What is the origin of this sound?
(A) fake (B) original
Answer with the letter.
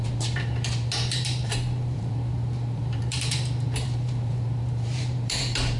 A